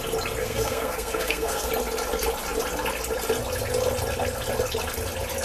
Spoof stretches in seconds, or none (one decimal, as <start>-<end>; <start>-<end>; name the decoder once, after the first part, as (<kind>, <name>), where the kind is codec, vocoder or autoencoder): 0.4-1.7 (codec, SNAC)

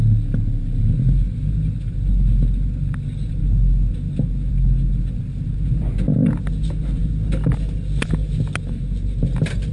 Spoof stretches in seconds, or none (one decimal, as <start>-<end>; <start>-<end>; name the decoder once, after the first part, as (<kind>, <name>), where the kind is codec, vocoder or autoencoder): none

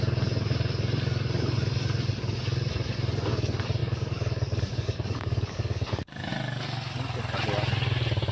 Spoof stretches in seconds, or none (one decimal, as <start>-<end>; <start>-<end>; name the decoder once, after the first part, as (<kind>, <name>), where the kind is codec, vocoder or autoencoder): 3.8-6.3 (codec, DAC)

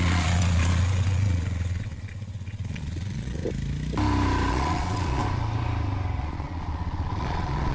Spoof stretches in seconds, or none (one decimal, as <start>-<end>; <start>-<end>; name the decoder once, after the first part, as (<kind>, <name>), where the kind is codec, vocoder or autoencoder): 0.0-3.4 (vocoder, Vocos); 4.5-5.2; 6.2-7.7

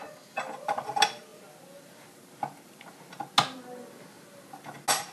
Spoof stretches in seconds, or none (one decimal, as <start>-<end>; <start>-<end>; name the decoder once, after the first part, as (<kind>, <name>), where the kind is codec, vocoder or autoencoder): none